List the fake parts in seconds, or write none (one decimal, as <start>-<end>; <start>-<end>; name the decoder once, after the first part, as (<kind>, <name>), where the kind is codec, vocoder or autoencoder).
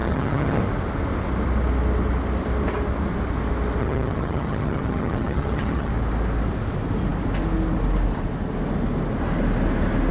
0.0-0.6 (vocoder, HiFi-GAN); 3.8-5.9